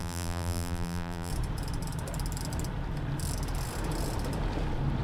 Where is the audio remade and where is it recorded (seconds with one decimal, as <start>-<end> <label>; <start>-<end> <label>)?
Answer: 0.0-1.3 remade; 1.3-5.0 recorded